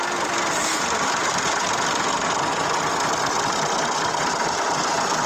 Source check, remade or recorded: recorded